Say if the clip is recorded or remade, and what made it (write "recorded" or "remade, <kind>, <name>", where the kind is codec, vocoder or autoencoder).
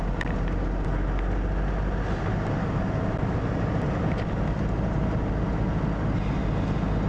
recorded